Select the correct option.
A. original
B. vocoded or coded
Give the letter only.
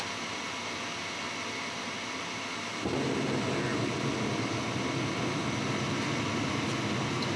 A